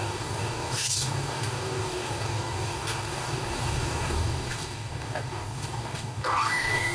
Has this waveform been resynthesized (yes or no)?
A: yes